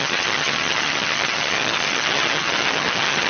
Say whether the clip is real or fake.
fake